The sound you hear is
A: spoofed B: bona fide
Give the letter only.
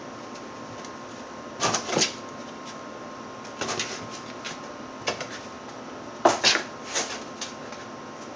B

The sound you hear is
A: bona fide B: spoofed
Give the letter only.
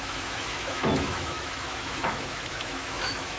B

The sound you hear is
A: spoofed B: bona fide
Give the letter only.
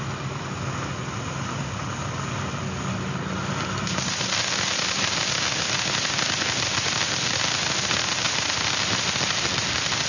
B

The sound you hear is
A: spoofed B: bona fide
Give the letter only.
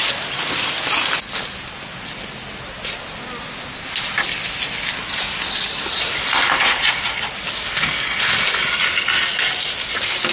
B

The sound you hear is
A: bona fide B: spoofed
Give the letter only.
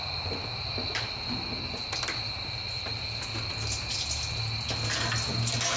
A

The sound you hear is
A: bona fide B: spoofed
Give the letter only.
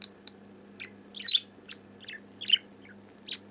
A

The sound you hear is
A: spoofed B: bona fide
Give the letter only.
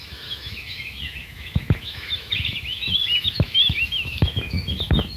A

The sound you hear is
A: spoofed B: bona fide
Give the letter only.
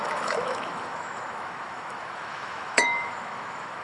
A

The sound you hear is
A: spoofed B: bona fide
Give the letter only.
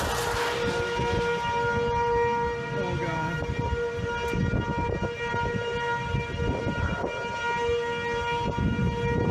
B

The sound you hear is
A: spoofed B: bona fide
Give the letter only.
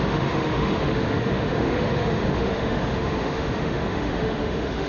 A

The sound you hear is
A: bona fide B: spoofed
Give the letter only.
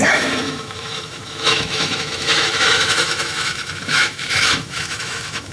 B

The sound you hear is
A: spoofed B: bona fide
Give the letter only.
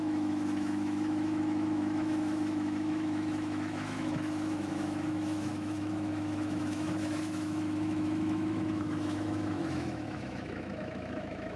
A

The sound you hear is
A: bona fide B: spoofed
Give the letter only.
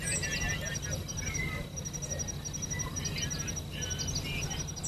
A